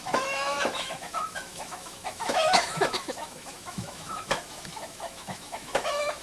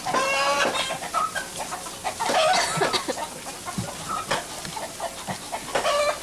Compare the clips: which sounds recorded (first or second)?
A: second